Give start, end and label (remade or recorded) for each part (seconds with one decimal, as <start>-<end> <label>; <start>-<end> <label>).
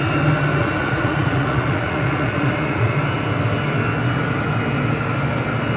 0.0-0.5 recorded; 0.5-3.0 remade; 3.0-5.8 recorded